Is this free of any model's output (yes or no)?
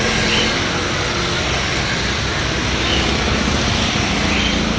yes